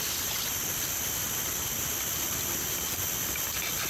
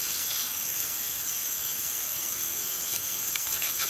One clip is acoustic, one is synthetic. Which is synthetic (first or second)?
second